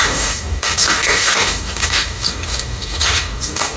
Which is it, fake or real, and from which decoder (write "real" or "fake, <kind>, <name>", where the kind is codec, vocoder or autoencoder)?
fake, codec, DAC